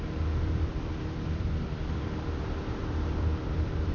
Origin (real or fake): fake